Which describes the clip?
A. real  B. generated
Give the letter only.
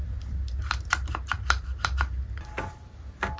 A